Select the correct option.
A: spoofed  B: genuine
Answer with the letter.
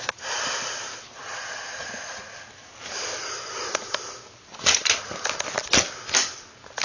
B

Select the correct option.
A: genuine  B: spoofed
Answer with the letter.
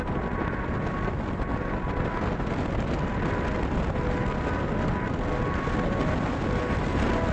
A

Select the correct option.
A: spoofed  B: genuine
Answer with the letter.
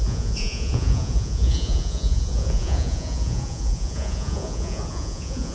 A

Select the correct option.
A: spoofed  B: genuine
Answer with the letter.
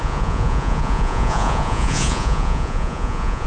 A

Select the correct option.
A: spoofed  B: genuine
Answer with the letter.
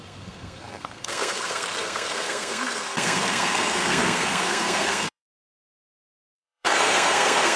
A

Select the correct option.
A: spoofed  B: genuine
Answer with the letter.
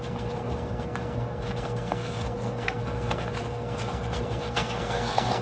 A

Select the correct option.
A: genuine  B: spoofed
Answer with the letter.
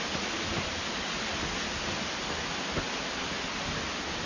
A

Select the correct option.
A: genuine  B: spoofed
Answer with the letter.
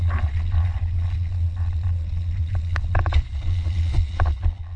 B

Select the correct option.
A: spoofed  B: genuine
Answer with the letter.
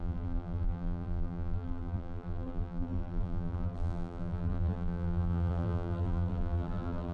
A